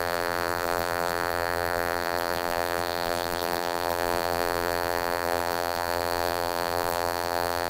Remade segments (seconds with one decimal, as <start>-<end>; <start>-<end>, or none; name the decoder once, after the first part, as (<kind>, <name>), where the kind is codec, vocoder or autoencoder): 0.0-7.7 (vocoder, BigVGAN v2)